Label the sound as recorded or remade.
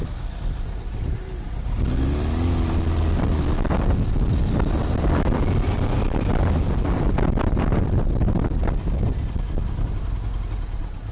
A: recorded